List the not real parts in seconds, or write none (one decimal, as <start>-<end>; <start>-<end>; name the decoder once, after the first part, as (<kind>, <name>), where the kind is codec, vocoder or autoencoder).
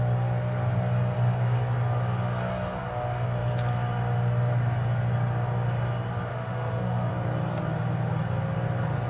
6.3-7.1 (autoencoder, DAC-VAE)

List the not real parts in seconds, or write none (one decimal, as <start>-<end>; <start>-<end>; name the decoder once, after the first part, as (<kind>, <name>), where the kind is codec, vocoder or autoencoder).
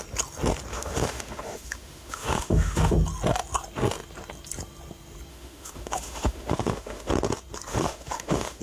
0.7-2.9 (autoencoder, DAC-VAE); 5.3-7.1; 7.7-8.6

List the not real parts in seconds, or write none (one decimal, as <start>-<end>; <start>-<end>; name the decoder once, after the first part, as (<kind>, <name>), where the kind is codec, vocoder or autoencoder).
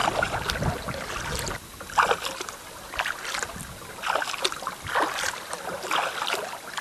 none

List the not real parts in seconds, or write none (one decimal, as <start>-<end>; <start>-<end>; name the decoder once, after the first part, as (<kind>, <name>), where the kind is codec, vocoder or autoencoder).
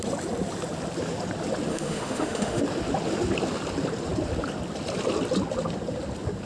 1.7-2.6 (autoencoder, DAC-VAE)